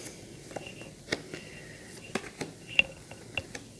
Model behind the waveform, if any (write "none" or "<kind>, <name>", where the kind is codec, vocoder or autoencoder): none